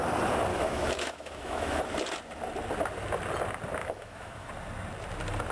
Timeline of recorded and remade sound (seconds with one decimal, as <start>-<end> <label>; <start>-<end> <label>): 0.0-0.5 recorded; 0.5-1.8 remade; 1.8-3.8 recorded; 3.8-4.5 remade; 4.5-5.5 recorded

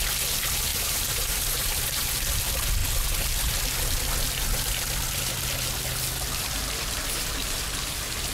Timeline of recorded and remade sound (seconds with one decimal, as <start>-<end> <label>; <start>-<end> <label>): 0.0-0.7 recorded; 0.7-2.1 remade; 2.1-8.3 recorded

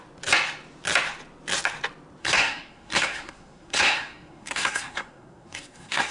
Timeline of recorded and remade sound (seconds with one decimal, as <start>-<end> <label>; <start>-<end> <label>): 0.0-2.2 recorded; 2.2-6.1 remade

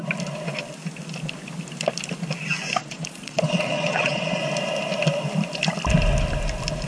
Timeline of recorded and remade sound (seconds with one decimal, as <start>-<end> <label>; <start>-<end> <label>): 0.0-2.8 recorded; 2.8-4.4 remade; 4.4-6.9 recorded